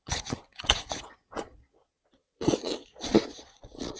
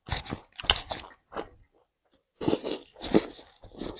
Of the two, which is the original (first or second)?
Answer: second